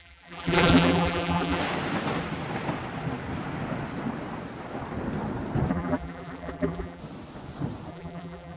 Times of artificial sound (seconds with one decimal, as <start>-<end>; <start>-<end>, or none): 0.0-1.6; 5.7-7.0; 7.9-8.6

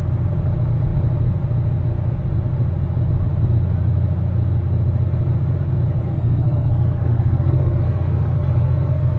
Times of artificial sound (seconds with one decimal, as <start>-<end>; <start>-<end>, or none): 6.0-9.2